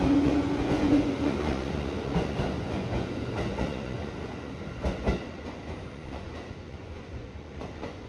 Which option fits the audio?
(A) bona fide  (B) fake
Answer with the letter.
B